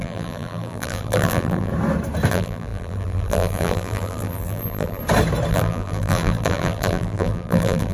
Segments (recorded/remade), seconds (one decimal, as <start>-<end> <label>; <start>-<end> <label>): 0.0-1.7 remade; 1.7-2.3 recorded; 2.3-5.0 remade; 5.0-5.5 recorded; 5.5-7.9 remade